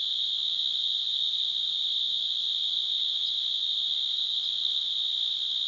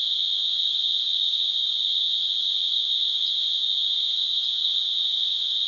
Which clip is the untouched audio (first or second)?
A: first